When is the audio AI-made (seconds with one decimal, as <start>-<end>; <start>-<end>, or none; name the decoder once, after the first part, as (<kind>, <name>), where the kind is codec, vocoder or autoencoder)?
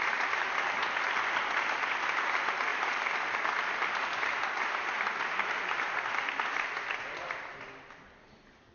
none